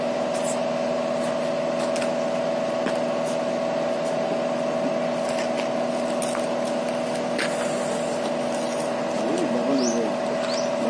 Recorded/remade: recorded